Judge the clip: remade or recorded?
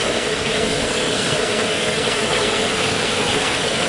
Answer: remade